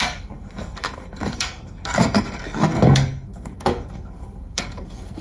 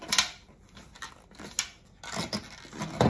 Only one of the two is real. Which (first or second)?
second